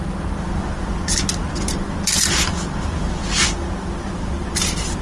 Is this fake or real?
real